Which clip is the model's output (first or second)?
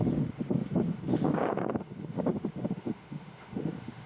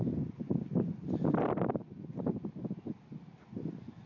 first